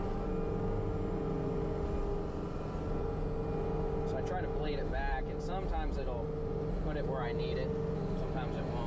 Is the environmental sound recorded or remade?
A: recorded